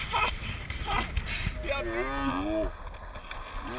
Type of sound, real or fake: real